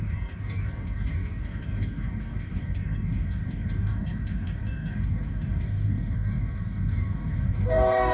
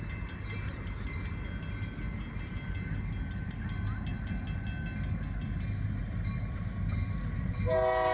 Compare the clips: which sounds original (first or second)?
second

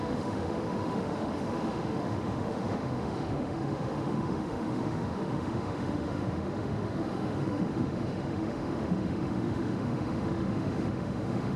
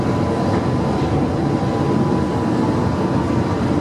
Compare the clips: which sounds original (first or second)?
second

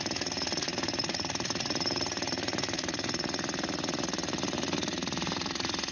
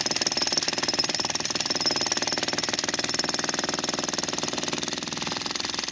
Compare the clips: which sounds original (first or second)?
second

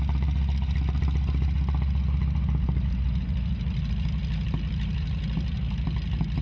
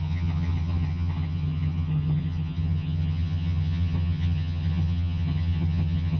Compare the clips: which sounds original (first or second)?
first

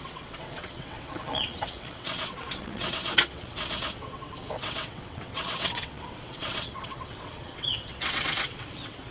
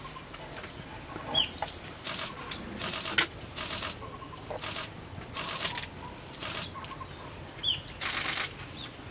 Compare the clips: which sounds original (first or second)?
second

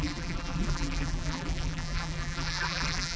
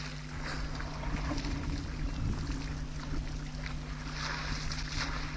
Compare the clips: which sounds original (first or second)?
second